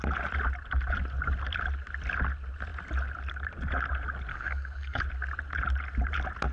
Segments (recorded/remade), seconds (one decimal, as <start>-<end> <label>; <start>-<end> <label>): 0.0-4.3 recorded; 4.3-5.0 remade; 5.0-6.5 recorded